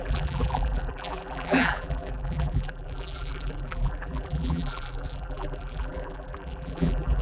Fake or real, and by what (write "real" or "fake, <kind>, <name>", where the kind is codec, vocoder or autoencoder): fake, vocoder, BigVGAN v2